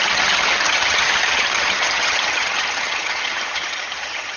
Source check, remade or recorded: remade